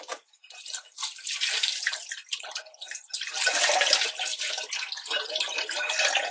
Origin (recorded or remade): remade